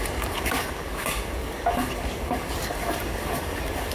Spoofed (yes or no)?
yes